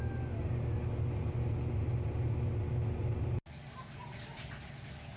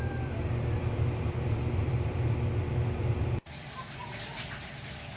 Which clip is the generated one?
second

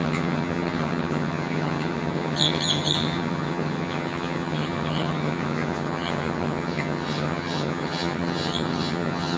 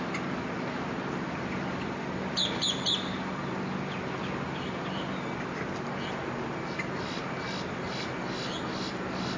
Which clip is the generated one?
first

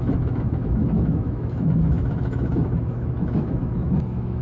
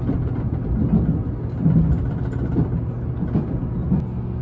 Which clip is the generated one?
first